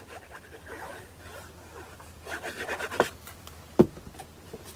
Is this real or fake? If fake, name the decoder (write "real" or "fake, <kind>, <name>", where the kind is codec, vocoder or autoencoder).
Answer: real